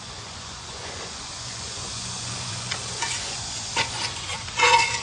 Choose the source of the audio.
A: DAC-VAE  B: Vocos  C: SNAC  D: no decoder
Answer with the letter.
B